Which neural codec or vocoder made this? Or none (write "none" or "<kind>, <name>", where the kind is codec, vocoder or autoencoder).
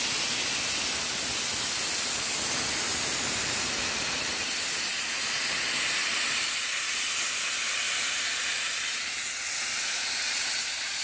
none